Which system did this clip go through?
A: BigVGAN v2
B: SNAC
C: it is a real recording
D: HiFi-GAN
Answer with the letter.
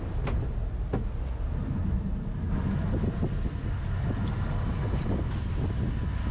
C